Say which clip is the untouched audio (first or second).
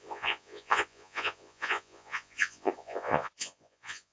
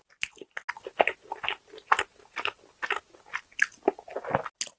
second